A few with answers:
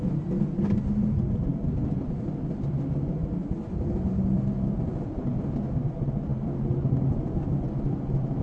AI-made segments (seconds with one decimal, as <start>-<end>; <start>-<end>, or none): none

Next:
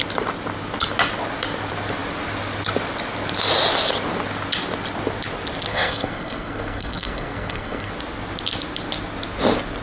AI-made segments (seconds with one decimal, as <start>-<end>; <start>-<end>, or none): 5.7-7.9

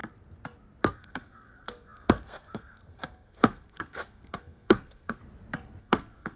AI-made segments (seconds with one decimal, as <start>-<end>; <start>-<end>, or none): 0.9-5.2; 5.8-6.4

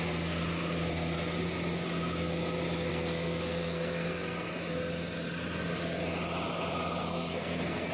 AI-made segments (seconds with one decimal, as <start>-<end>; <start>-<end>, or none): 2.9-4.5; 7.0-7.9

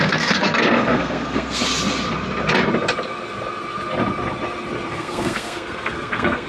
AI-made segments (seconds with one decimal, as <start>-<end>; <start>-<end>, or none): 0.0-1.6; 4.9-6.5